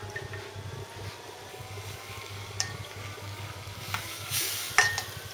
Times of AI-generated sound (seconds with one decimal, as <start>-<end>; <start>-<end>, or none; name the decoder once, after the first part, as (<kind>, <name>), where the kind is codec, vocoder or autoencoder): 1.5-4.7 (codec, DAC)